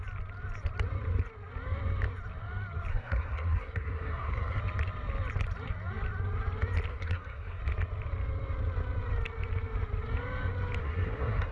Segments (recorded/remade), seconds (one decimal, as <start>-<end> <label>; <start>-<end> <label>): 0.0-2.9 recorded; 2.9-4.6 remade; 4.6-6.9 recorded; 6.9-7.6 remade; 7.6-10.8 recorded; 10.8-11.5 remade